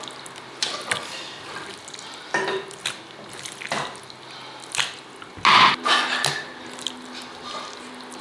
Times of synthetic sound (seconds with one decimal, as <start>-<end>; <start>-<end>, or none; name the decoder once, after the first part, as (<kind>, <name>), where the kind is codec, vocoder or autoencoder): none